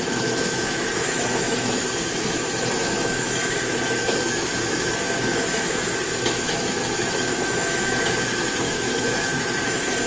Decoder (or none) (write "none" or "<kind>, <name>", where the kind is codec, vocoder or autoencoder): autoencoder, DAC-VAE